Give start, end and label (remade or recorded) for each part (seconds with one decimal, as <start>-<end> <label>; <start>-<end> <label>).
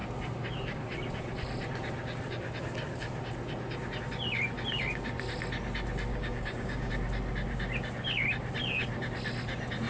0.0-6.1 recorded; 6.1-6.9 remade; 6.9-9.9 recorded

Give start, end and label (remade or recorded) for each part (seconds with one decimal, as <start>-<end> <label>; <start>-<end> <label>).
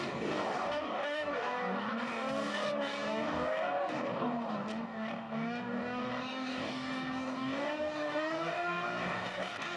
0.0-9.8 remade